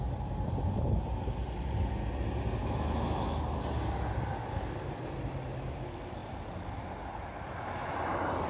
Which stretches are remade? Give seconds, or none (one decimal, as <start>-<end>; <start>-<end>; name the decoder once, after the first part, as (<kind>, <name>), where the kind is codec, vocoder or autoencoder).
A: 2.6-3.6 (autoencoder, DAC-VAE)